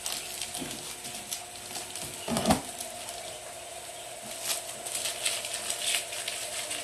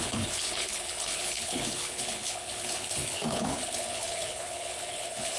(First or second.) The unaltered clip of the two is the first